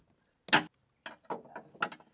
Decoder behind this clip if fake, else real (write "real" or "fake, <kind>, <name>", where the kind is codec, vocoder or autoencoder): real